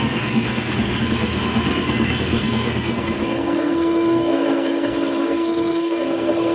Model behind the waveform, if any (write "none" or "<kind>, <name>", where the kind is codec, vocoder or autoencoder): codec, SNAC